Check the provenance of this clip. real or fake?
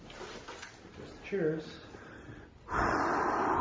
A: real